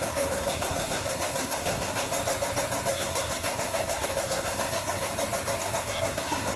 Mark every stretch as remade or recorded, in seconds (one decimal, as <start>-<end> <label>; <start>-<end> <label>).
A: 0.0-2.1 remade; 2.1-2.9 recorded; 2.9-5.1 remade; 5.1-5.6 recorded; 5.6-6.6 remade